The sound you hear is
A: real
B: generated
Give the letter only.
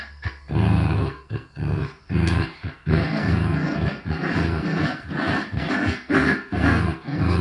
B